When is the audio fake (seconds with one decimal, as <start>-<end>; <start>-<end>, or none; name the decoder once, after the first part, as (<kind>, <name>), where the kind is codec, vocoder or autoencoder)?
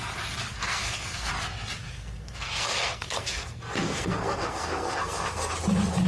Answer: 0.5-1.3 (codec, SNAC); 1.8-5.5